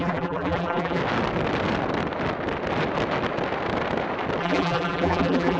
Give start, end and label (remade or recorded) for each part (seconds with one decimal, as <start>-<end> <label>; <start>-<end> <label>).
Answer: 0.0-1.0 remade; 1.0-4.4 recorded; 4.4-5.6 remade